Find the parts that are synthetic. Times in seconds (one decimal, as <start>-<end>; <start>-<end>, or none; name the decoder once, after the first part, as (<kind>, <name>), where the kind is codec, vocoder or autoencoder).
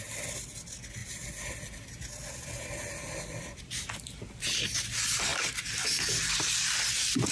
none